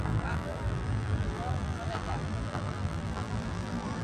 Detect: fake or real fake